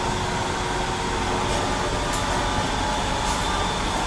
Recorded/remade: recorded